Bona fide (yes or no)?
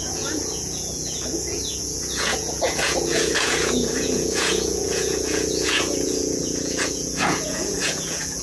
no